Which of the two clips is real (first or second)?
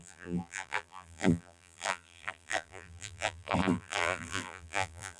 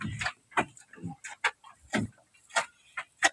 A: second